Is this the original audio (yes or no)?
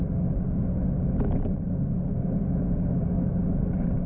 yes